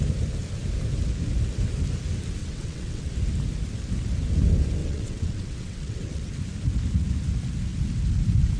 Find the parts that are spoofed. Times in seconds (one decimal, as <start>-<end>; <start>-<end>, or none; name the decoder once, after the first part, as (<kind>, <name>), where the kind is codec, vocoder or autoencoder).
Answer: 2.4-3.1 (vocoder, WaveNeXt); 4.8-6.4